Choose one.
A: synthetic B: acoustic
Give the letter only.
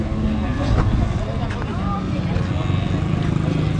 B